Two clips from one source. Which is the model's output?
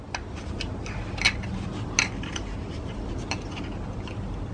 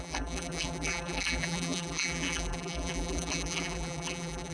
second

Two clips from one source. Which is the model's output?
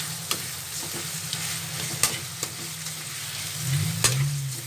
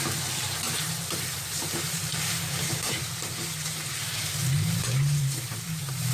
second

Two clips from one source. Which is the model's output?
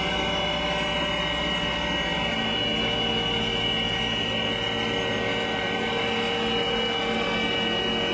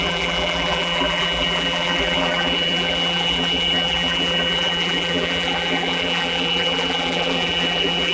second